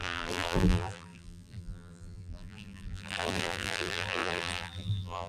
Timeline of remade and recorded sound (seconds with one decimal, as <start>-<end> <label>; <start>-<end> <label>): 0.0-5.3 remade